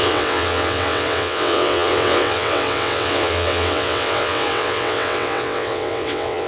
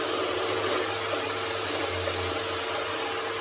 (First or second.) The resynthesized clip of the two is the first